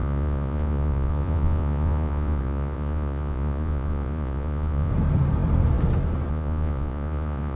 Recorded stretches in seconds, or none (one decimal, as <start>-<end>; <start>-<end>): 4.9-6.3